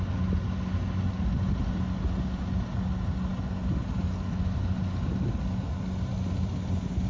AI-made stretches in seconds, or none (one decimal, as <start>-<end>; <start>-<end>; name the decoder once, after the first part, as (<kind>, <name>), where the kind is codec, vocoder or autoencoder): none